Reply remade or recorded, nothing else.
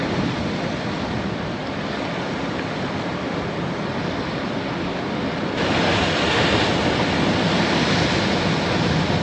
recorded